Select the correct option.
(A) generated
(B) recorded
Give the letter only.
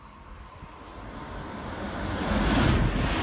B